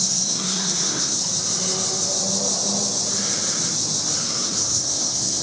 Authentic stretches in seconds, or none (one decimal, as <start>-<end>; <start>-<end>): 1.2-4.2